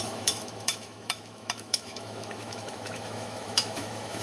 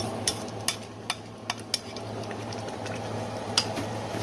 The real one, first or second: second